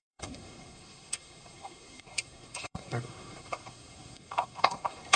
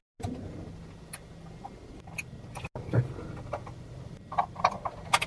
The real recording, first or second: second